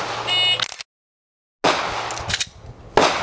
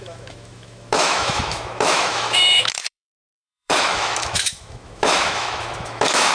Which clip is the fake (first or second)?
second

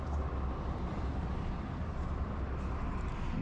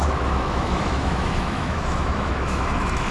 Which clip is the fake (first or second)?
second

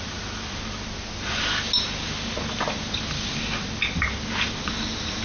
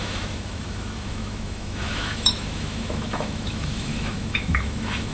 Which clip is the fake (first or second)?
second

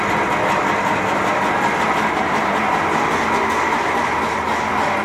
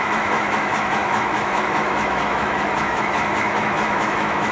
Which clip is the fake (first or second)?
second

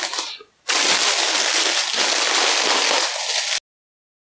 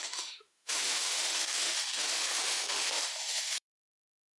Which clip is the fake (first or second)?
second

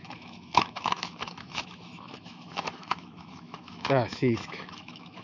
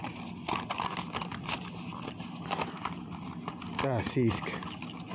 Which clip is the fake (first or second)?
first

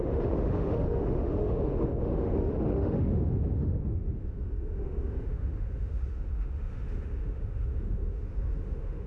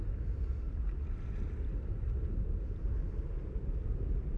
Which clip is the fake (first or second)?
first